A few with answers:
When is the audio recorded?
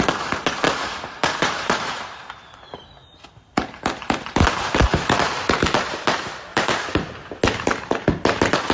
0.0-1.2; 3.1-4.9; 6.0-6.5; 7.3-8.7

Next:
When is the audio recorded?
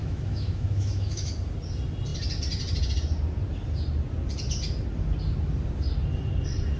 1.3-6.8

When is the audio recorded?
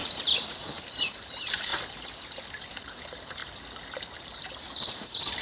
1.7-2.6; 3.4-4.2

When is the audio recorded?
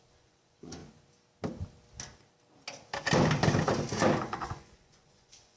0.8-4.2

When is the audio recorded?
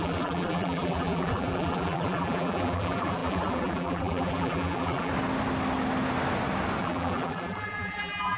5.1-6.8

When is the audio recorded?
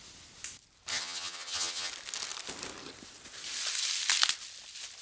0.0-0.9; 1.9-5.0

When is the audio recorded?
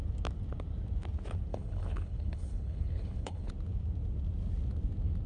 0.0-1.5; 3.5-5.3